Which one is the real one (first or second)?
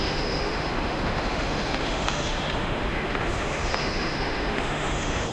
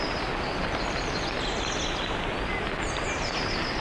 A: second